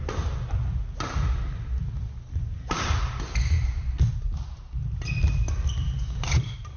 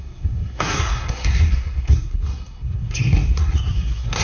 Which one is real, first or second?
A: first